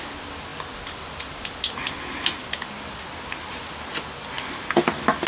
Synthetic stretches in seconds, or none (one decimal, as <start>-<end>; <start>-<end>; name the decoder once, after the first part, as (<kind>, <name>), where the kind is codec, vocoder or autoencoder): none